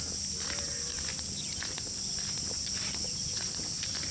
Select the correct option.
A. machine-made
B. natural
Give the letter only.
B